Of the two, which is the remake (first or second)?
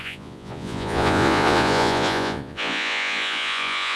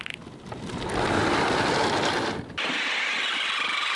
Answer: first